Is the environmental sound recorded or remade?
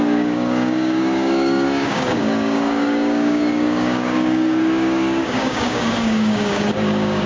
remade